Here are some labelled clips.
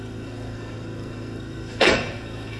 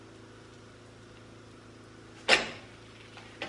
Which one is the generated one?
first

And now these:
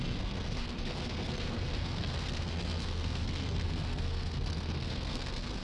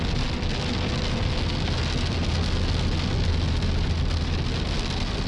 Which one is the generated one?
first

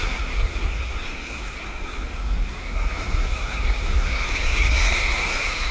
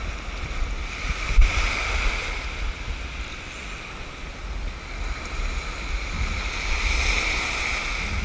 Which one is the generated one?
first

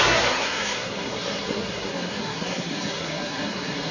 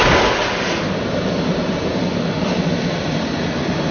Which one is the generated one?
first